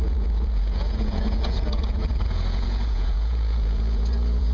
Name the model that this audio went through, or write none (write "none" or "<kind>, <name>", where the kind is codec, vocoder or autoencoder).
vocoder, Vocos